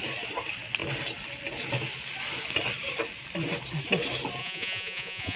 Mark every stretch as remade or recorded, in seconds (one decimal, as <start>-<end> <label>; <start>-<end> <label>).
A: 0.0-4.4 recorded; 4.4-5.4 remade